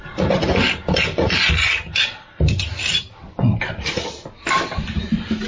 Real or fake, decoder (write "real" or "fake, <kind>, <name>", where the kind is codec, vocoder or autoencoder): fake, vocoder, BigVGAN v2